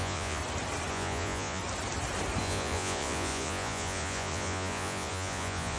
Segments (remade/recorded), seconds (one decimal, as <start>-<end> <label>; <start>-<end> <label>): 0.0-0.4 remade; 0.4-0.9 recorded; 0.9-1.6 remade; 1.6-2.4 recorded; 2.4-5.8 remade